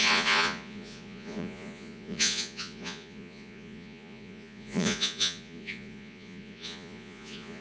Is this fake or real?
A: fake